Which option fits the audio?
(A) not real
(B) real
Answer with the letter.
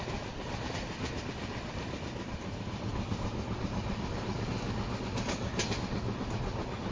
B